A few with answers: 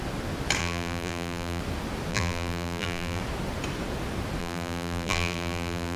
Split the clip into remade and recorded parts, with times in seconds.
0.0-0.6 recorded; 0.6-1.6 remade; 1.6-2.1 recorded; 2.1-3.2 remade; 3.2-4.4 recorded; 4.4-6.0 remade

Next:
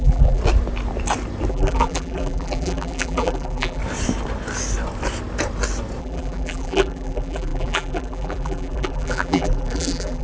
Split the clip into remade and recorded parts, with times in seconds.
0.0-0.4 remade; 0.4-1.5 recorded; 1.5-3.8 remade; 3.8-6.0 recorded; 6.0-10.2 remade

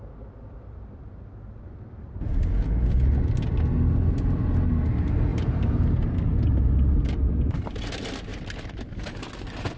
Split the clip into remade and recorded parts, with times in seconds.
0.0-5.3 recorded; 5.3-7.3 remade; 7.3-8.3 recorded; 8.3-9.2 remade; 9.2-9.8 recorded

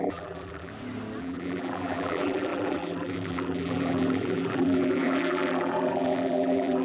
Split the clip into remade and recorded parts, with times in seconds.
0.0-0.7 remade; 0.7-1.2 recorded; 1.2-6.8 remade